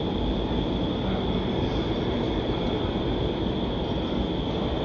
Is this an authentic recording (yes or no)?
yes